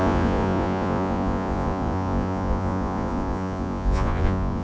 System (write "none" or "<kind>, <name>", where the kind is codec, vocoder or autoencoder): vocoder, Vocos